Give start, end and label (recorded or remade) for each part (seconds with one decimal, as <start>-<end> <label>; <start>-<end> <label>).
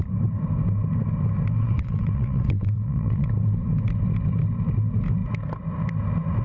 0.0-1.6 recorded; 1.6-3.3 remade; 3.3-6.4 recorded